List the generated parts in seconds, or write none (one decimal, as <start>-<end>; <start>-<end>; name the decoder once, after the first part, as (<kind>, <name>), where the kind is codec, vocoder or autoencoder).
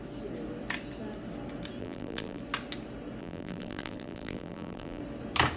1.8-2.4 (vocoder, BigVGAN v2); 3.2-5.0